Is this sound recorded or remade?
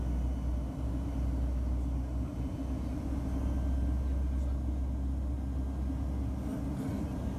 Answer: recorded